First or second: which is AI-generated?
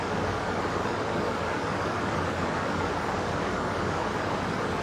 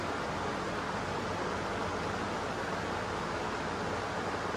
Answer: first